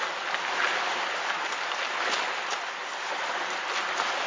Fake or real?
real